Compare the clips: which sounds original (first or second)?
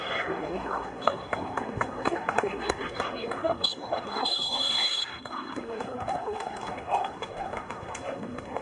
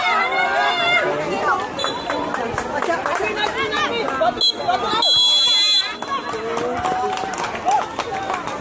second